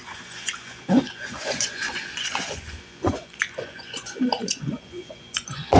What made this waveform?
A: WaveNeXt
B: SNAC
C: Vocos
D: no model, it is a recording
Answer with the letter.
C